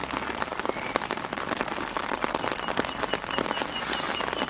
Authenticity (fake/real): real